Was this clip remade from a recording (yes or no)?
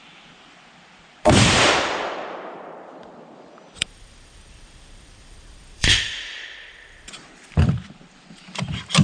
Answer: yes